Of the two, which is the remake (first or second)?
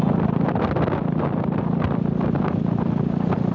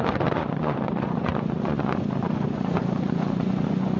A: second